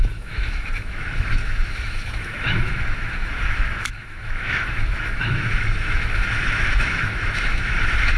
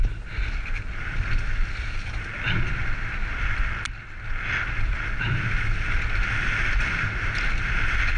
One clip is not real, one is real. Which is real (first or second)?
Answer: second